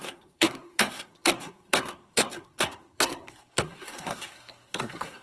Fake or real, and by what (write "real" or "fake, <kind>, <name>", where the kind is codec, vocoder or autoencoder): fake, codec, SNAC